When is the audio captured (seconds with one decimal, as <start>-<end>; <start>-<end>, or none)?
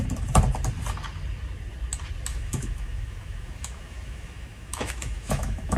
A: 0.0-2.3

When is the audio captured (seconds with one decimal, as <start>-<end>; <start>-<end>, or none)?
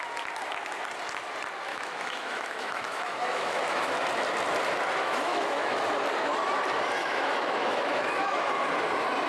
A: 0.0-1.7; 3.9-5.0; 5.8-7.0; 8.4-9.3